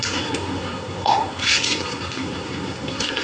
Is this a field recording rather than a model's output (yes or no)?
no